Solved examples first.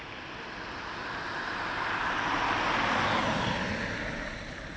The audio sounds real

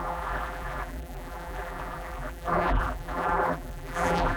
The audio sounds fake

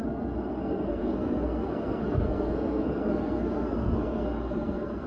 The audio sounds fake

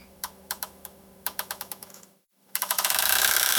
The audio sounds fake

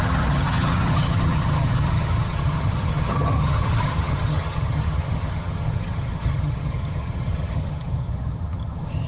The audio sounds fake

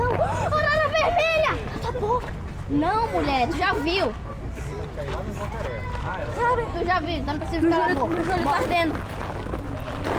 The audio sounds real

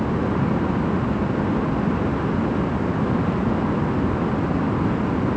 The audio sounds real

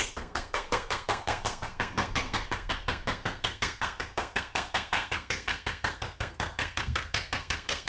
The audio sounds fake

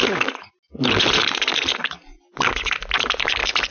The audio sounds real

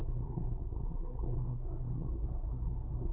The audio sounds fake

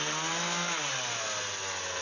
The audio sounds real